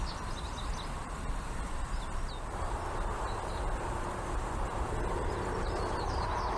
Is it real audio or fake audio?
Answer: real